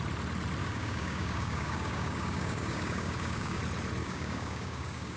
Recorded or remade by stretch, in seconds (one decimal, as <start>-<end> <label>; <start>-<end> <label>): 0.0-0.6 recorded; 0.6-3.6 remade; 3.6-4.0 recorded; 4.0-5.2 remade